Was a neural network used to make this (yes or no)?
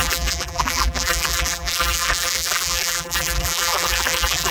yes